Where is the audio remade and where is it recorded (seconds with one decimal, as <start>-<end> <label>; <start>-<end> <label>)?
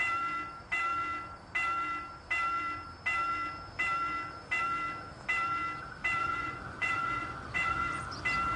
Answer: 0.0-6.2 recorded; 6.2-8.0 remade; 8.0-8.6 recorded